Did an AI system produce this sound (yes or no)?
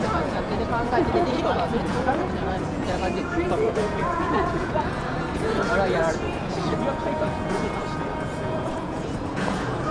yes